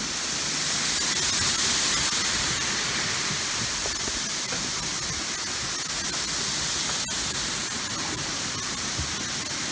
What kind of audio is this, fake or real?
real